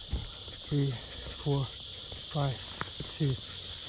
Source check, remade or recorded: recorded